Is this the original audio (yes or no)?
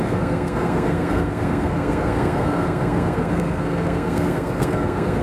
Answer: no